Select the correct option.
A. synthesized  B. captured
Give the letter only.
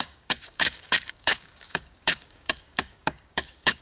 A